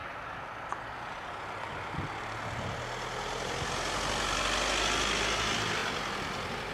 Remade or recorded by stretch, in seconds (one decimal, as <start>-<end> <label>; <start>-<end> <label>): 0.0-6.7 recorded